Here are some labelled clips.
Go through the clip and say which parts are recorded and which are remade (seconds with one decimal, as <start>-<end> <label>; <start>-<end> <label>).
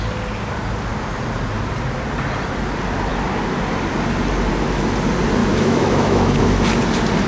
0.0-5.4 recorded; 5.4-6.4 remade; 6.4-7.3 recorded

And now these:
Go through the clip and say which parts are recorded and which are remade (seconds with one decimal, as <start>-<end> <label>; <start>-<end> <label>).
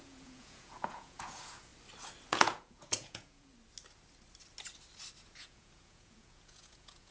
0.0-1.7 remade; 1.7-2.3 recorded; 2.3-3.5 remade; 3.5-5.2 recorded; 5.2-7.1 remade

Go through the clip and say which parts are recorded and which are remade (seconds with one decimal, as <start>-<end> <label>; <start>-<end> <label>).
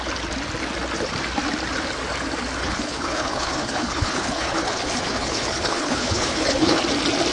0.0-2.6 recorded; 2.6-6.8 remade; 6.8-7.3 recorded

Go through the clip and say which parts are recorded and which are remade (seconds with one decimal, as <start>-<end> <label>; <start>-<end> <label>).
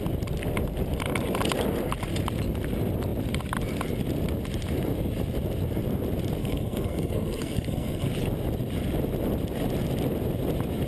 0.0-6.4 recorded; 6.4-8.1 remade; 8.1-10.9 recorded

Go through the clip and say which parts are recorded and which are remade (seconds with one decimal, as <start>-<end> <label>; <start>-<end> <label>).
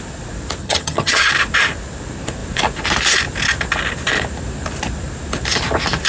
0.0-0.6 recorded; 0.6-1.3 remade; 1.3-6.1 recorded